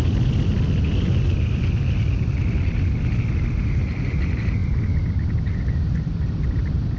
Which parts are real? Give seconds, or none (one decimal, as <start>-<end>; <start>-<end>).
0.0-7.0